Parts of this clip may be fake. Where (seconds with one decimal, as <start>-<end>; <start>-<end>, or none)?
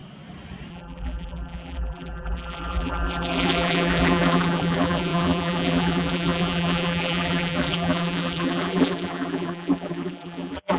0.7-10.8